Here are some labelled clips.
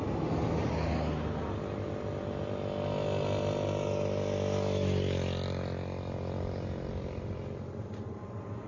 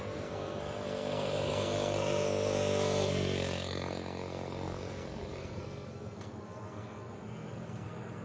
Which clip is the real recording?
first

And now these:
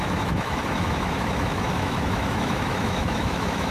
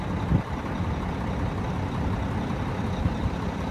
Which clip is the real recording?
second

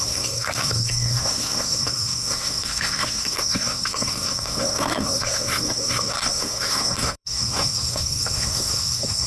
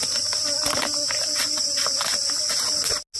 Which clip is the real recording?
second